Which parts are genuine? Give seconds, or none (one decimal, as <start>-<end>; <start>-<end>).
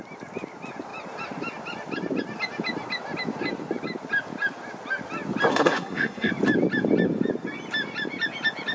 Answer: 0.0-5.5; 6.3-8.7